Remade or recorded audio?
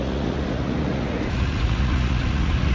remade